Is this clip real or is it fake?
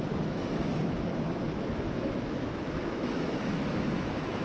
fake